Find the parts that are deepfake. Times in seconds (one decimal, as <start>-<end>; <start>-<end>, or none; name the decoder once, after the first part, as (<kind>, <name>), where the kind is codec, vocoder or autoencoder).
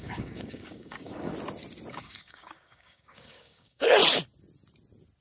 0.0-1.3 (codec, DAC); 1.9-4.0